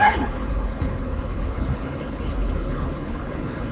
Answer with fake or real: fake